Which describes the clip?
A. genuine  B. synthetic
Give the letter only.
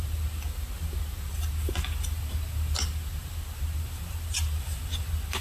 A